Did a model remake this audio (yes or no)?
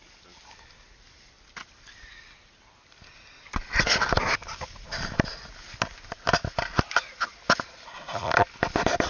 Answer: no